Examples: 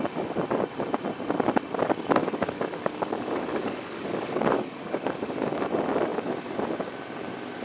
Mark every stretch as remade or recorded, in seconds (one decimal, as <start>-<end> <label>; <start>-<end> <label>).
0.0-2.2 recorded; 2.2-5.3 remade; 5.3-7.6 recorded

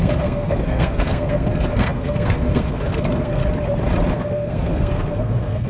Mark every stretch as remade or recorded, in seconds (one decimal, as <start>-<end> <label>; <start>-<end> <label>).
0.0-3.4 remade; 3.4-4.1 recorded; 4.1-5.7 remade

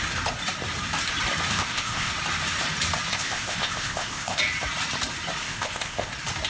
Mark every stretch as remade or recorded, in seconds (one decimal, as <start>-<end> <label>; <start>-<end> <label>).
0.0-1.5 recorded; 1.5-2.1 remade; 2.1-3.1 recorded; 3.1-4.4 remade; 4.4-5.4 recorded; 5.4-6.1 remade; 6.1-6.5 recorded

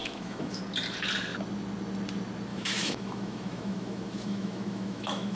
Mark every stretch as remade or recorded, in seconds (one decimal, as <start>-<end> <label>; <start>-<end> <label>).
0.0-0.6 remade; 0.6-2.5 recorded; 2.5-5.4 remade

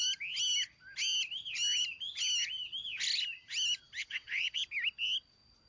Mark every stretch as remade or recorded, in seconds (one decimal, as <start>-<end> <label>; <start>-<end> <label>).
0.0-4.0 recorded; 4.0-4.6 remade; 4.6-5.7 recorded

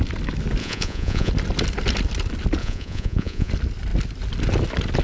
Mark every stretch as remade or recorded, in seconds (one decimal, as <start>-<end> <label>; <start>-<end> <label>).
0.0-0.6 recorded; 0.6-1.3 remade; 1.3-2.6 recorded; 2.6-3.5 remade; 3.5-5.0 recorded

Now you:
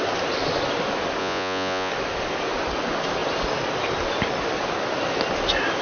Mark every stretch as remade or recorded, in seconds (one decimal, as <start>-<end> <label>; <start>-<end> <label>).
0.0-1.2 recorded; 1.2-1.9 remade; 1.9-5.8 recorded

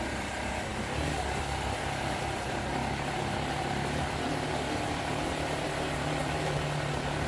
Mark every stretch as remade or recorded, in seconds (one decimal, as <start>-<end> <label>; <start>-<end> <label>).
0.0-7.3 recorded